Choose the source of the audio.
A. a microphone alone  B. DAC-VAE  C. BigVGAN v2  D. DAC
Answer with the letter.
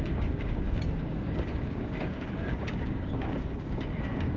D